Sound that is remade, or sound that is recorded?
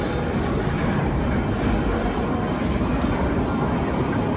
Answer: recorded